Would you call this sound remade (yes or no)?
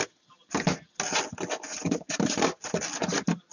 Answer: no